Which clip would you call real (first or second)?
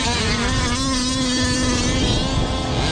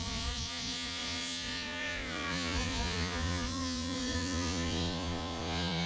first